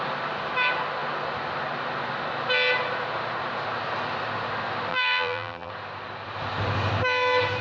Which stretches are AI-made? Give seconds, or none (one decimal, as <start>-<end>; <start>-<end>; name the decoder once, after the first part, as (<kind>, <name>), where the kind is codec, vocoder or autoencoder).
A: 4.9-5.7 (vocoder, BigVGAN v2)